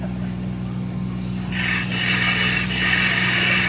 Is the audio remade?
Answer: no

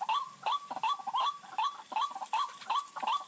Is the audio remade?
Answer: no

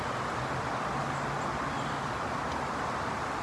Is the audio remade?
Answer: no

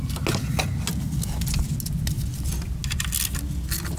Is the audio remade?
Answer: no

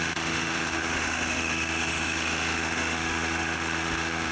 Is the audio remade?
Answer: yes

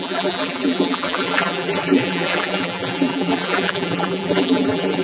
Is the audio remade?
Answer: yes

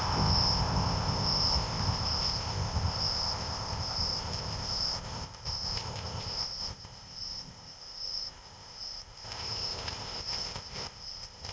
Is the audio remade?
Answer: yes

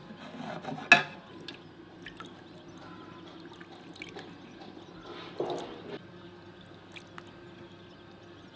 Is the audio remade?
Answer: no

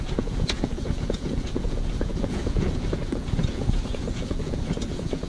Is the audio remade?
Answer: yes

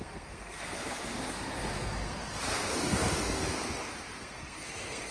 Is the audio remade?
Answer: yes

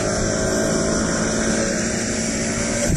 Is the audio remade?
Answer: no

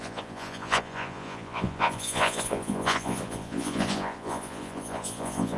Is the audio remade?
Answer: yes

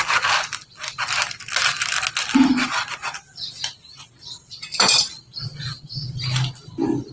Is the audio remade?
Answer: no